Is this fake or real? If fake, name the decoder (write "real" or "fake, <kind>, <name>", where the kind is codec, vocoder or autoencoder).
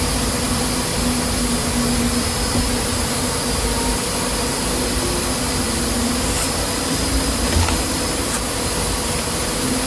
real